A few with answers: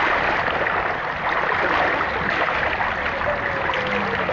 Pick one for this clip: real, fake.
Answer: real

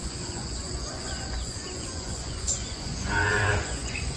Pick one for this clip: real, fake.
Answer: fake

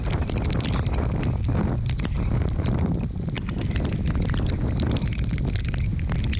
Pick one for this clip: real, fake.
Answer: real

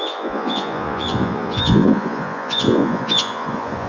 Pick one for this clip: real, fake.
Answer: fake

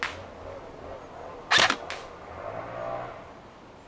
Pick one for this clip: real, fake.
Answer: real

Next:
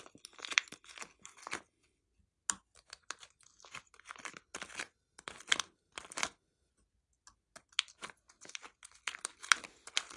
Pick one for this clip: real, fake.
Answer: real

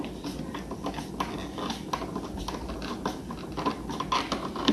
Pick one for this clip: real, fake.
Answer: real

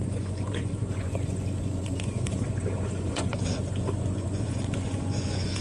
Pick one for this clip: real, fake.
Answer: fake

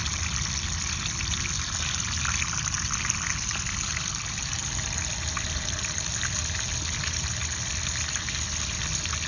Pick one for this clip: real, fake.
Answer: real